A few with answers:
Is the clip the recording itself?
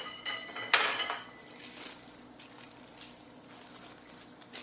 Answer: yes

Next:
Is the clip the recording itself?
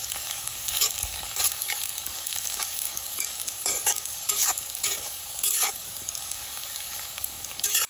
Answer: no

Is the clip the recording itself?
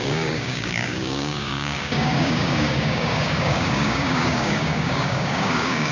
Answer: no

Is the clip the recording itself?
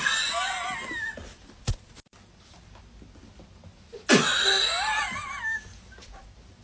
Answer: yes